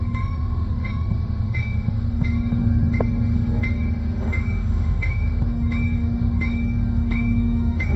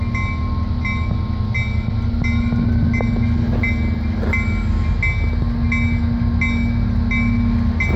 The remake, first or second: first